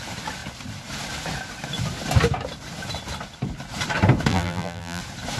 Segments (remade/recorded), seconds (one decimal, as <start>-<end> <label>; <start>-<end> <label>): 0.0-4.3 recorded; 4.3-5.0 remade; 5.0-5.4 recorded

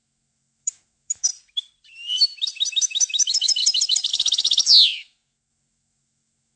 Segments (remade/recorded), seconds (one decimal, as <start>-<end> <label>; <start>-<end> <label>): 0.0-1.3 remade; 1.3-2.7 recorded; 2.7-3.6 remade; 3.6-4.1 recorded; 4.1-6.6 remade

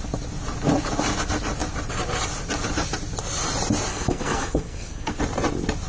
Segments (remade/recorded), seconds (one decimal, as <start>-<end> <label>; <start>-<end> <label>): 0.0-3.9 recorded; 3.9-5.2 remade; 5.2-5.9 recorded

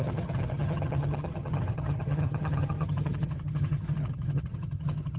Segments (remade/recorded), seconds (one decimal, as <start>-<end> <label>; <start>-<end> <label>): 0.0-5.2 remade

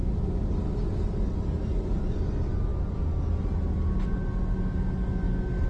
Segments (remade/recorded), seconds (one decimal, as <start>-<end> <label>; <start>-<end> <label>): 0.0-5.7 recorded

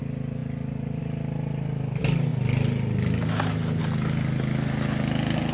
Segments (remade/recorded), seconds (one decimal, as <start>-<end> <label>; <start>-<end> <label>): 0.0-5.5 recorded